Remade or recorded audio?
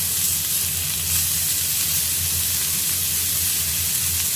recorded